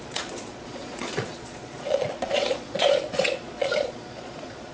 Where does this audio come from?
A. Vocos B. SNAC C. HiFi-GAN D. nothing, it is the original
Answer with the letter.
A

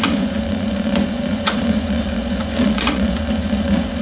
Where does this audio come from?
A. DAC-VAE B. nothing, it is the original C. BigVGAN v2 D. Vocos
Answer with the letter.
D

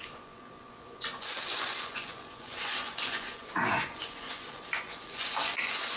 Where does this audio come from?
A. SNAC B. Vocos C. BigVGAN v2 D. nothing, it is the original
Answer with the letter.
B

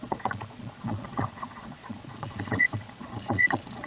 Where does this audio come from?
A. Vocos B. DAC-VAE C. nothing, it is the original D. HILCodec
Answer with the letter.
A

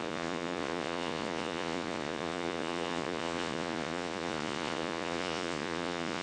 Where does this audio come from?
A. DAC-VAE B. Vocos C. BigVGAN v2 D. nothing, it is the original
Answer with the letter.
B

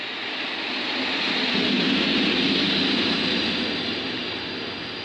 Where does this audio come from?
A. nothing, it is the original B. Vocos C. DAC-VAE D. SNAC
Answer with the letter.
A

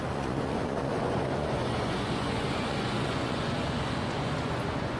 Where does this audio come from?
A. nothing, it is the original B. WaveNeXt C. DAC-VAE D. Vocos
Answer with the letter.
D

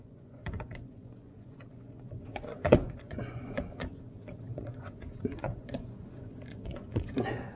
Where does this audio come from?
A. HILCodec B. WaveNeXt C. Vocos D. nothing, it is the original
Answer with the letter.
C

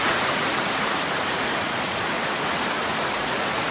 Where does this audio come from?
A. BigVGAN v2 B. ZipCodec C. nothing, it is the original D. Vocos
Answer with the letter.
D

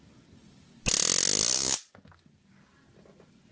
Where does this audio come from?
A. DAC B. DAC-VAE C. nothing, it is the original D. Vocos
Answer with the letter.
C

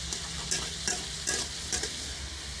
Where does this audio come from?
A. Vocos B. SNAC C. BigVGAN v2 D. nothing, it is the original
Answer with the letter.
D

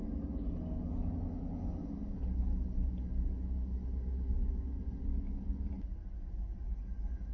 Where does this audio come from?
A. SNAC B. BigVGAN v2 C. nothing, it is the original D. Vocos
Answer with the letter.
C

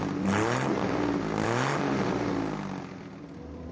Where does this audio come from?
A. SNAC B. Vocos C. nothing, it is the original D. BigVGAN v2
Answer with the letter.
C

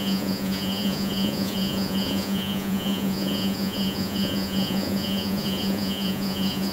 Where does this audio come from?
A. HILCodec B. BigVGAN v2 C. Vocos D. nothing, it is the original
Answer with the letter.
C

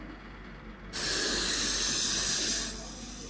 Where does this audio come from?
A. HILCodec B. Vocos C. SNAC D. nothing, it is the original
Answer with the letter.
D